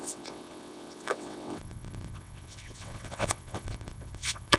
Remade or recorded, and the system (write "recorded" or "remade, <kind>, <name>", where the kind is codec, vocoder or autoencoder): remade, vocoder, WaveNeXt